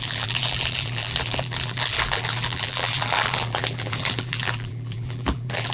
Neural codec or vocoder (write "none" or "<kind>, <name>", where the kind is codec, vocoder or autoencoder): vocoder, BigVGAN v2